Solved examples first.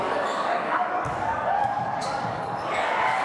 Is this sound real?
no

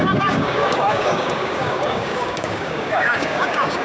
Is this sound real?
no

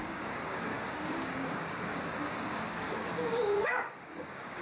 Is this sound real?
no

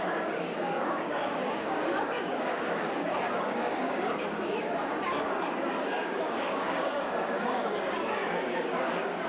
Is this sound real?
no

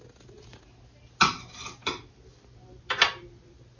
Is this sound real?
yes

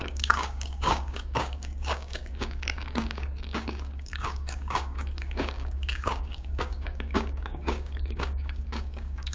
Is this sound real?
no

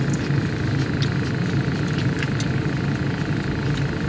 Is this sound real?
yes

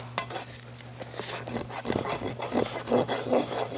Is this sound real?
yes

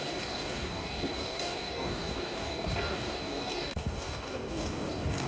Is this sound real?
no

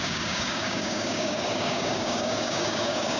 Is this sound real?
no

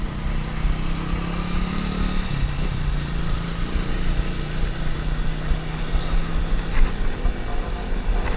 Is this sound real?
yes